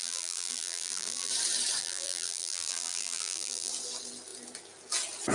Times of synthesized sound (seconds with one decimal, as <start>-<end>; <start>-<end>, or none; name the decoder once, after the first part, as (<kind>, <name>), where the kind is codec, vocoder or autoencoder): 0.0-1.3 (vocoder, BigVGAN v2); 1.8-3.7